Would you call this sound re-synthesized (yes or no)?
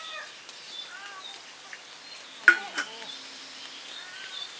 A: no